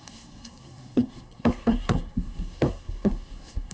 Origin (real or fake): fake